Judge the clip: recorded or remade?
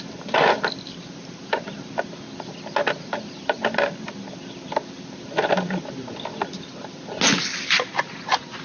recorded